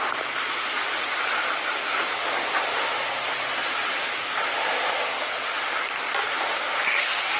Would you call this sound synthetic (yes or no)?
no